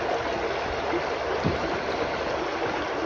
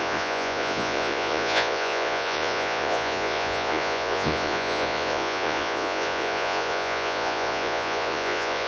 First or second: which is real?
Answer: first